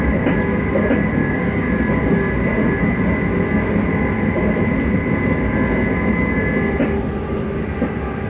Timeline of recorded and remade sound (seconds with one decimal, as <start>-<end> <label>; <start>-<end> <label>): 0.0-1.2 recorded; 1.2-1.7 remade; 1.7-8.3 recorded